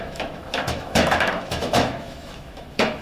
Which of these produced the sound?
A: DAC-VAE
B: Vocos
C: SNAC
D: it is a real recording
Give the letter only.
A